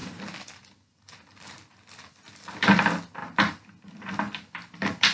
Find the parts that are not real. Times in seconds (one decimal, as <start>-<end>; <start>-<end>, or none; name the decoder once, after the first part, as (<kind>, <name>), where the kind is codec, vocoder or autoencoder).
0.0-1.0 (vocoder, BigVGAN v2); 3.2-4.1